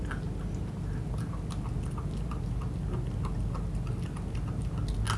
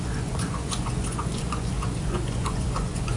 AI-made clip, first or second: second